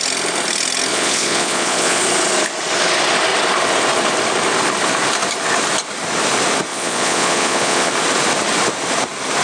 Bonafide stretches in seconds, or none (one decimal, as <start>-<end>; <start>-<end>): 0.0-0.9; 2.0-6.7; 7.9-9.4